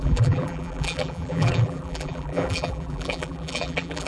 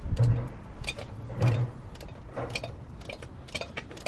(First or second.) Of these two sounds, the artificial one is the first